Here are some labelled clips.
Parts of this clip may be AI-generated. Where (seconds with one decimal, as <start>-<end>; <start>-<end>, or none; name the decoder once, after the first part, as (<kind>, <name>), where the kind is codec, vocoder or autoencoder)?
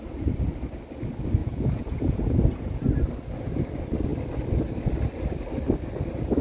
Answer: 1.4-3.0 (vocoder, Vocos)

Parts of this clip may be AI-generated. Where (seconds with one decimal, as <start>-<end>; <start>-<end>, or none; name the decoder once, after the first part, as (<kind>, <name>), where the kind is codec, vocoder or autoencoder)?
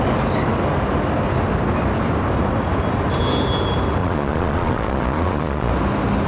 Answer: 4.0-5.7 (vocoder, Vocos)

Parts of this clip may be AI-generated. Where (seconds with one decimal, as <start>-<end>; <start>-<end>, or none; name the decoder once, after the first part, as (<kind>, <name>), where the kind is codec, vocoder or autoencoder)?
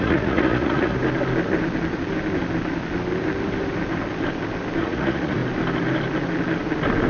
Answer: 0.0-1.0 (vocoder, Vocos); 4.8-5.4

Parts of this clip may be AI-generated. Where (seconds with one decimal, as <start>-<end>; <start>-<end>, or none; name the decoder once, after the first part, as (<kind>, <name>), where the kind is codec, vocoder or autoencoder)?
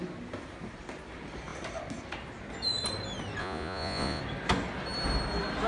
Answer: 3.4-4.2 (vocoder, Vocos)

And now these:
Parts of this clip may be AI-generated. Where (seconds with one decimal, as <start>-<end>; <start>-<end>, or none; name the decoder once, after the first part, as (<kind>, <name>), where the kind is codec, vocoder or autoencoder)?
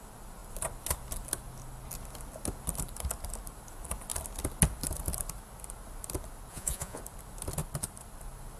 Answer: 6.5-7.0 (vocoder, Vocos)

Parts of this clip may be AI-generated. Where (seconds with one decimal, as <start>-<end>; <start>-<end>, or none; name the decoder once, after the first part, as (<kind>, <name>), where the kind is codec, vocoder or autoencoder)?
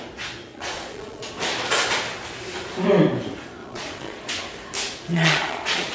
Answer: 0.5-1.3 (vocoder, Vocos); 3.6-4.3; 5.1-5.9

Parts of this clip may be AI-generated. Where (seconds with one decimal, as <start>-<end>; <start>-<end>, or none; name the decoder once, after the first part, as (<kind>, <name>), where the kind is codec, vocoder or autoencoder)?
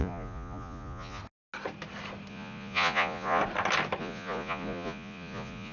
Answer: 0.0-1.2 (vocoder, Vocos); 2.3-3.4; 4.0-5.7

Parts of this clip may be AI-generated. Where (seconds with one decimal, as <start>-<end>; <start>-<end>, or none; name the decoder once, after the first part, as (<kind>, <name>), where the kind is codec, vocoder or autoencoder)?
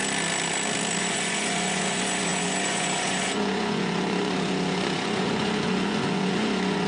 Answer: 1.0-6.9 (vocoder, Vocos)